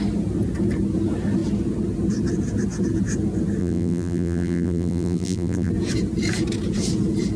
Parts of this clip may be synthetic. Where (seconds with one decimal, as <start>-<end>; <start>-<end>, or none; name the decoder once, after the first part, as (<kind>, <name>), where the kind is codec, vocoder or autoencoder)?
3.6-5.7 (vocoder, BigVGAN v2)